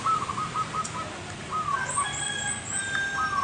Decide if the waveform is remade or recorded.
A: recorded